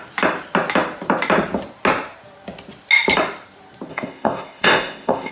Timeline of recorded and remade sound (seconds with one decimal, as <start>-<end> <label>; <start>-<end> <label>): 0.0-3.9 recorded; 3.9-5.3 remade